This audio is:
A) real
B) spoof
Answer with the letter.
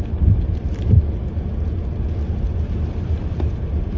A